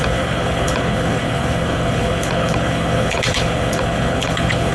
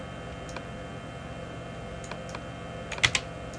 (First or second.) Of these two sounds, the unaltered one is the second